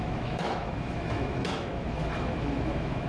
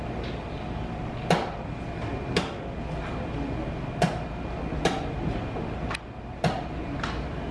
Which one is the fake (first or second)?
first